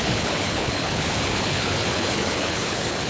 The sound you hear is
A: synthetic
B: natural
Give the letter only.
A